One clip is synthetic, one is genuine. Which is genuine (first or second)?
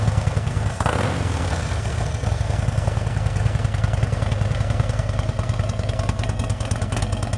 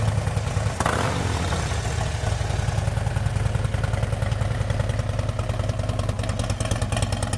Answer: second